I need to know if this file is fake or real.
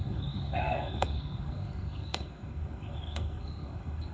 fake